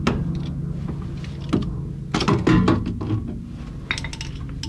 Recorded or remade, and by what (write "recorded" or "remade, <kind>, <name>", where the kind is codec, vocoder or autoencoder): recorded